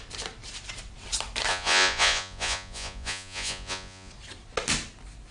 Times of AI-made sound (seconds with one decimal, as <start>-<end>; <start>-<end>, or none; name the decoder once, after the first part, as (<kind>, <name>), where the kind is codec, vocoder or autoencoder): 1.5-4.1 (vocoder, Vocos)